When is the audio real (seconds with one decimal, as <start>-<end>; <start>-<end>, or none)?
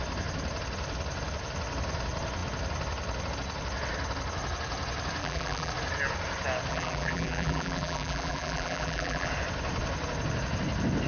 0.0-5.2; 5.7-6.7; 9.3-11.1